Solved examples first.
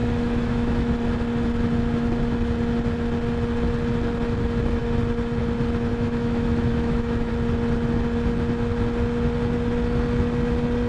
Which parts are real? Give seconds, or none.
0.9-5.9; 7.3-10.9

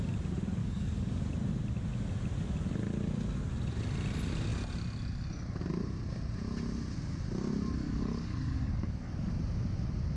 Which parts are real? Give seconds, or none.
0.0-0.6; 1.2-7.8; 9.3-10.2

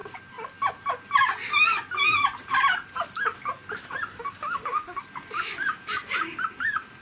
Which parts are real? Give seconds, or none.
0.0-4.1; 5.0-7.0

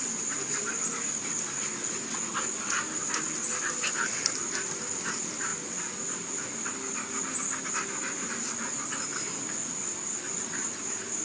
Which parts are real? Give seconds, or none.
0.0-11.2

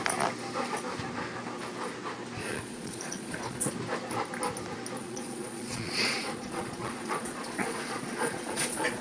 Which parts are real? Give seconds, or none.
0.0-2.4; 3.7-5.0